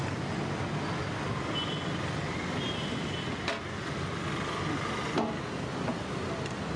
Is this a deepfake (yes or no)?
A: no